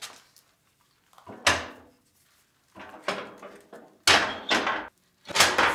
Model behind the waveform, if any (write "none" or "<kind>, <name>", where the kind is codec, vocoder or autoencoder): none